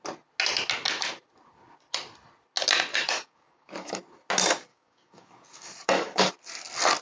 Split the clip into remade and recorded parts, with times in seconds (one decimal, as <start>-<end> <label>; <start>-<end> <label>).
0.0-2.9 recorded; 2.9-4.0 remade; 4.0-4.7 recorded; 4.7-6.3 remade; 6.3-7.0 recorded